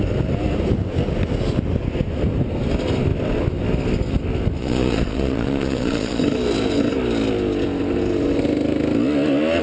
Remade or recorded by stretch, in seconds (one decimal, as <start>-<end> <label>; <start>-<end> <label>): 0.0-4.6 recorded; 4.6-6.2 remade; 6.2-9.6 recorded